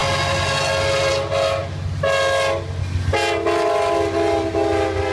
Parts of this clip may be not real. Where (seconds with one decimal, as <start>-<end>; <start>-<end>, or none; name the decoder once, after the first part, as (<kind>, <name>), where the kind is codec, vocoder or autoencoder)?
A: none